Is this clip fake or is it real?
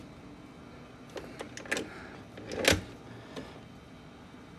real